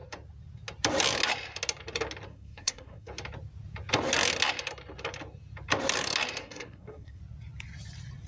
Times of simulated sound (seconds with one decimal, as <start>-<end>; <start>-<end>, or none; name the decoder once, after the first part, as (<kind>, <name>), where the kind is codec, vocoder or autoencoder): 2.3-3.1 (codec, SNAC); 6.4-7.2